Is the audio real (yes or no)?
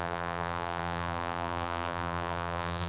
no